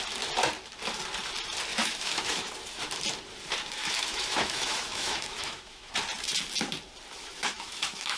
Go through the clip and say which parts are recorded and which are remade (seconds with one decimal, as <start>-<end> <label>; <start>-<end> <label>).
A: 0.0-1.7 recorded; 1.7-2.5 remade; 2.5-3.8 recorded; 3.8-5.9 remade; 5.9-7.2 recorded; 7.2-8.2 remade